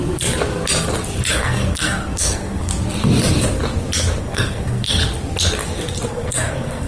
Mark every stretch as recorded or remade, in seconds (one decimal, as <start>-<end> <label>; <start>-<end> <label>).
0.0-1.3 recorded; 1.3-2.7 remade; 2.7-4.2 recorded; 4.2-5.0 remade; 5.0-6.1 recorded; 6.1-6.9 remade

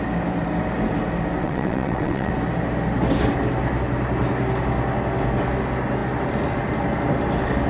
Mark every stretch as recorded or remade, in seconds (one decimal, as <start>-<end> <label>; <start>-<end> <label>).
0.0-1.4 recorded; 1.4-2.3 remade; 2.3-7.7 recorded

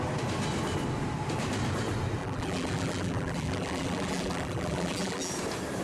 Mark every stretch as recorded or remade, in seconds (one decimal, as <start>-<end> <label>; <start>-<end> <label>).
0.0-2.2 recorded; 2.2-5.3 remade; 5.3-5.8 recorded

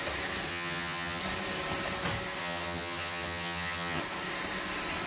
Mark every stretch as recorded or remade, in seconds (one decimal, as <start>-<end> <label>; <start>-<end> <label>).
0.0-0.5 recorded; 0.5-1.2 remade; 1.2-2.4 recorded; 2.4-4.0 remade; 4.0-5.1 recorded

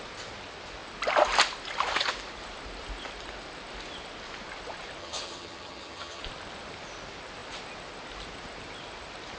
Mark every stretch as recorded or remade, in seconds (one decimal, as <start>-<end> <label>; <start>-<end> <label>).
0.0-5.0 recorded; 5.0-6.2 remade; 6.2-9.4 recorded

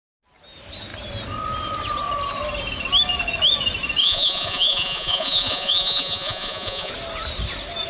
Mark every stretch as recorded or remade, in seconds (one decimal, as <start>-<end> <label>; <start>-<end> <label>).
0.0-4.0 recorded; 4.0-6.9 remade; 6.9-7.9 recorded